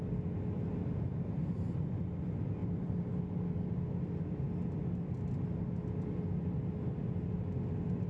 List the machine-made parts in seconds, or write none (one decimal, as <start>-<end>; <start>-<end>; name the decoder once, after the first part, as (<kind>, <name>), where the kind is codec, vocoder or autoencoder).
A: none